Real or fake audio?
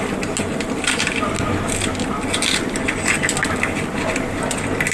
real